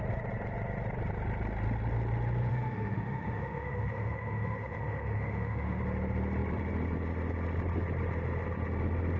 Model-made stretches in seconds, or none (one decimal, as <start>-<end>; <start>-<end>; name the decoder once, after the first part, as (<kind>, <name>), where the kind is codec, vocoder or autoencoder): 2.5-5.8 (autoencoder, DAC-VAE)